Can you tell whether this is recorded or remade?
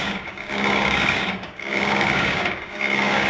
remade